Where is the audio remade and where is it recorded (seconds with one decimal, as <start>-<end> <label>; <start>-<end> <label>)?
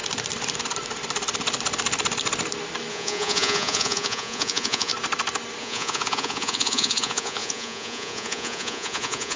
0.0-2.9 recorded; 2.9-4.9 remade; 4.9-5.6 recorded; 5.6-9.4 remade